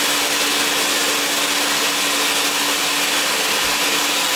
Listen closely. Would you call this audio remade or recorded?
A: recorded